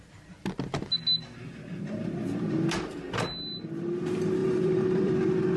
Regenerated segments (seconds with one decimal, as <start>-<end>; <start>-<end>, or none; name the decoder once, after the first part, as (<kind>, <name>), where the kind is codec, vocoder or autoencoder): 4.4-5.1 (vocoder, BigVGAN v2)